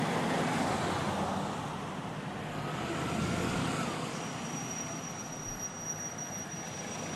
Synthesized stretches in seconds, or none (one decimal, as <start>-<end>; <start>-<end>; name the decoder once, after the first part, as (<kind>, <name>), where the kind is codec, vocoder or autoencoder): 2.4-4.2 (codec, DAC)